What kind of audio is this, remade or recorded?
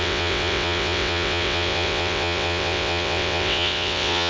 remade